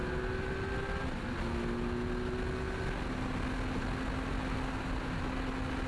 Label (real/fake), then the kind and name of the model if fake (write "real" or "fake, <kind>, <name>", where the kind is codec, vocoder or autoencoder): real